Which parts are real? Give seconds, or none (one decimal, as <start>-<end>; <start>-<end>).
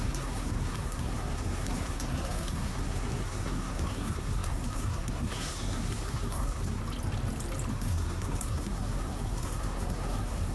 6.8-7.7